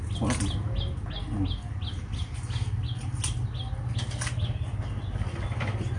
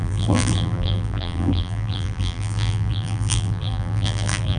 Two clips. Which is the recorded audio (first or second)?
first